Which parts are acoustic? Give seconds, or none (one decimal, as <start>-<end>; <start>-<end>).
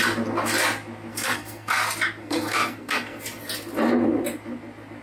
0.0-1.1; 1.8-2.2; 3.2-5.0